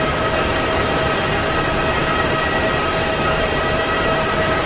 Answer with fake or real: fake